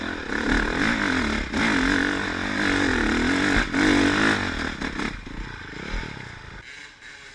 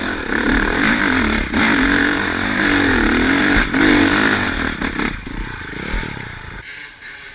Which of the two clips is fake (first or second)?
second